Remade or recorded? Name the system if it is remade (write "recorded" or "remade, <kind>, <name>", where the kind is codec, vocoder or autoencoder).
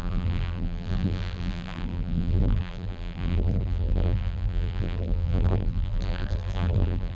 remade, vocoder, BigVGAN v2